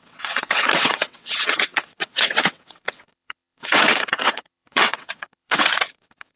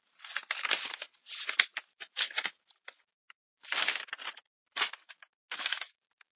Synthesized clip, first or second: first